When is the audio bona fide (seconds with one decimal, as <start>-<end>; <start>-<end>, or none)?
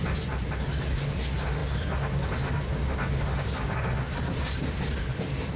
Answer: 0.0-5.6